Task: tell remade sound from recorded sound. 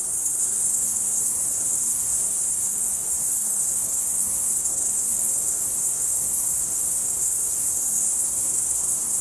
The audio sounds remade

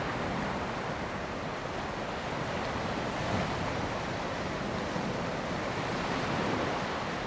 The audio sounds recorded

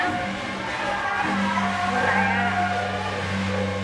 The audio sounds recorded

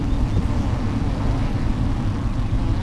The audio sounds recorded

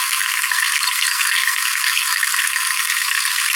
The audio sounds remade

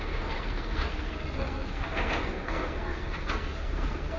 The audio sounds remade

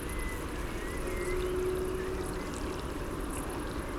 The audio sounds recorded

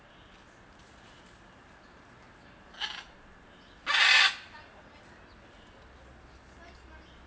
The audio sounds recorded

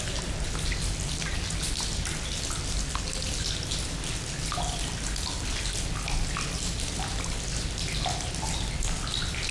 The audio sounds recorded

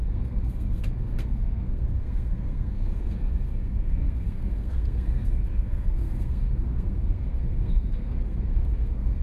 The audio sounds remade